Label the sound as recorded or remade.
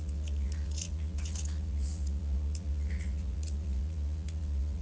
remade